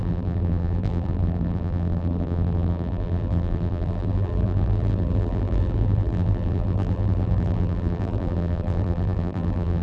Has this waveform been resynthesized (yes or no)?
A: yes